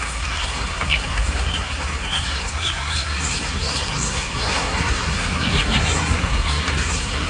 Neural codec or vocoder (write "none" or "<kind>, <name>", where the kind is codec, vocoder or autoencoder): codec, SNAC